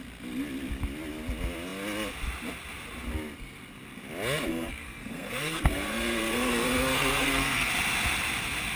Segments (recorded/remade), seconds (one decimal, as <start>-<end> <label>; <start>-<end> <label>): 0.0-4.5 recorded; 4.5-7.7 remade; 7.7-8.8 recorded